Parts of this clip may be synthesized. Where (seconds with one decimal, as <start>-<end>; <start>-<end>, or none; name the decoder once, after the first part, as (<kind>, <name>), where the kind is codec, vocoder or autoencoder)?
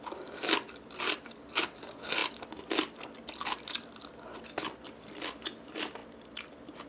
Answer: none